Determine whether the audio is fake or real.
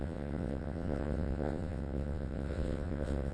fake